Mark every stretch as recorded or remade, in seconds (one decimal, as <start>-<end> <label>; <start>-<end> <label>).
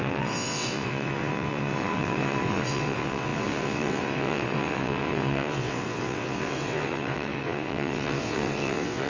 0.0-9.1 remade